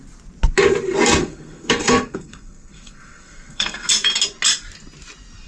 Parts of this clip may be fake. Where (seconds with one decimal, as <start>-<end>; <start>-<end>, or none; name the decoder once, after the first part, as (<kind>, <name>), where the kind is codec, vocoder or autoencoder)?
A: 1.2-3.9 (codec, SNAC)

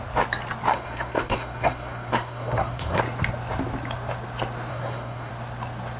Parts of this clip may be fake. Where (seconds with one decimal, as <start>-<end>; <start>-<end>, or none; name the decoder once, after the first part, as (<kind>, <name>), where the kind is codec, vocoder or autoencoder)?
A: 0.7-3.0 (codec, SNAC); 4.7-5.3